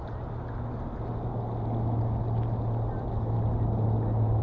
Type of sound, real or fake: real